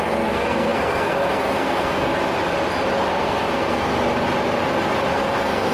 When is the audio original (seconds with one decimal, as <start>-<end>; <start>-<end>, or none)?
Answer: 2.1-3.1; 3.9-5.1